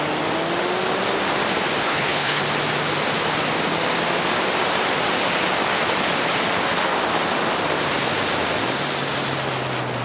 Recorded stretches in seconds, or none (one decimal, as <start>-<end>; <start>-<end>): 0.0-1.8; 2.4-10.0